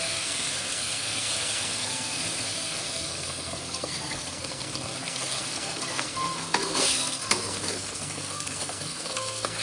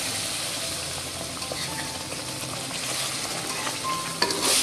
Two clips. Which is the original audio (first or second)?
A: second